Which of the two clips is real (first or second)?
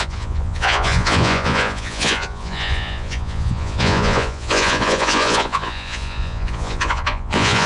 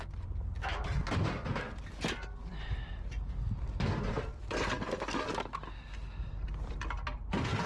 second